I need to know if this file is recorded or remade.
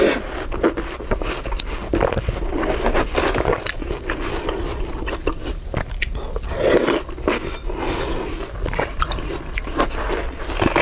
recorded